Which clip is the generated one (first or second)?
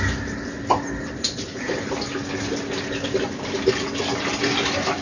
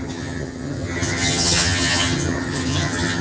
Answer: second